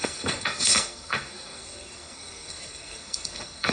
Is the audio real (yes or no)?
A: no